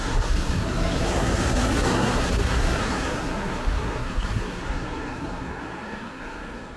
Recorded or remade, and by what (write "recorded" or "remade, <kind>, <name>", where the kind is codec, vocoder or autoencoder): remade, codec, SNAC